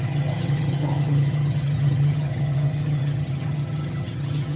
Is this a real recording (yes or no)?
no